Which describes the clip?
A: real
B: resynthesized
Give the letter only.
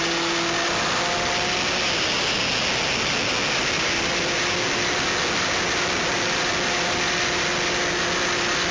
A